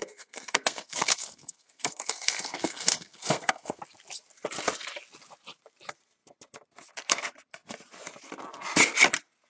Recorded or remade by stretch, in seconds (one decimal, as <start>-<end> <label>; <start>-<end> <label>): 0.0-3.8 remade; 3.8-9.5 recorded